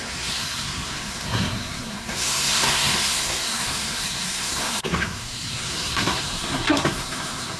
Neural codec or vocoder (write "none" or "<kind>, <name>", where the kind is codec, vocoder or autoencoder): codec, SNAC